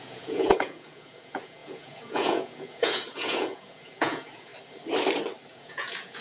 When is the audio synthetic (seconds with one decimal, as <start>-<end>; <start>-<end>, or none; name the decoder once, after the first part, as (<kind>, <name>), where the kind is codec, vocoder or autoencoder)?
0.0-4.5 (vocoder, Vocos); 5.5-6.2